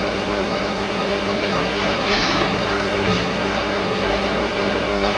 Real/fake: fake